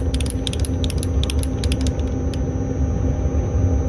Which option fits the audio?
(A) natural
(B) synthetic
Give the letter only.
A